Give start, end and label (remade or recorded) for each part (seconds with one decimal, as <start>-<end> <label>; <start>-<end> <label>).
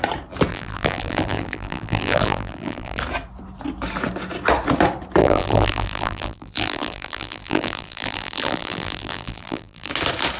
0.0-0.5 recorded; 0.5-3.0 remade; 3.0-5.2 recorded; 5.2-9.9 remade; 9.9-10.4 recorded